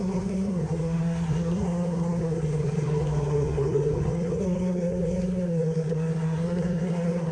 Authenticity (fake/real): fake